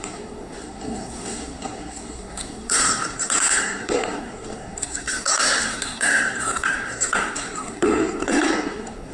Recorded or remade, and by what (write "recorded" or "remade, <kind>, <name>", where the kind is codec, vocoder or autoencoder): remade, codec, SNAC